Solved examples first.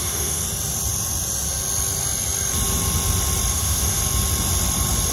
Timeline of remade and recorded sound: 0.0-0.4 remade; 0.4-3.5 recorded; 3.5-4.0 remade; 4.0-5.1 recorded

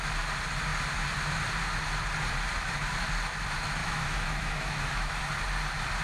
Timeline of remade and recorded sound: 0.0-3.8 recorded; 3.8-5.2 remade; 5.2-6.0 recorded

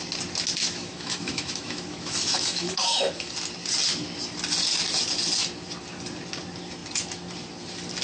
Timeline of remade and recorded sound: 0.0-0.6 recorded; 0.6-3.3 remade; 3.3-8.0 recorded

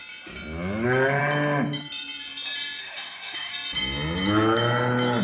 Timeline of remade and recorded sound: 0.0-2.8 recorded; 2.8-3.5 remade; 3.5-5.2 recorded

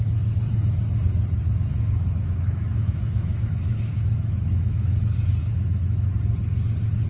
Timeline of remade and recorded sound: 0.0-1.7 recorded; 1.7-5.0 remade; 5.0-5.4 recorded; 5.4-6.1 remade; 6.1-7.1 recorded

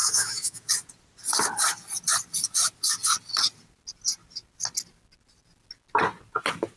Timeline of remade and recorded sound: 0.0-0.7 remade; 0.7-6.8 recorded

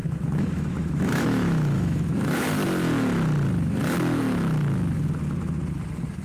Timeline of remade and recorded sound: 0.0-2.4 remade; 2.4-6.2 recorded

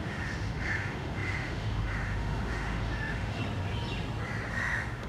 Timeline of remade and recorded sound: 0.0-3.4 remade; 3.4-4.5 recorded; 4.5-5.1 remade